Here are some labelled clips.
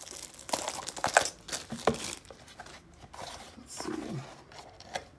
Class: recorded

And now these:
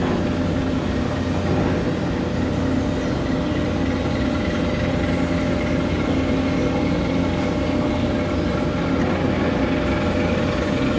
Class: recorded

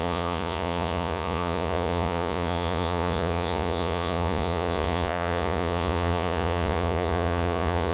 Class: remade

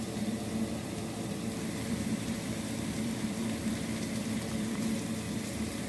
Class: remade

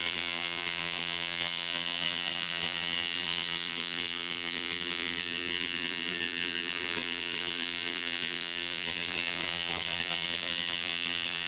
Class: remade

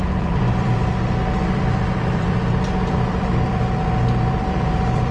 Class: remade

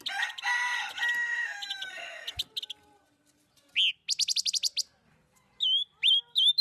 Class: recorded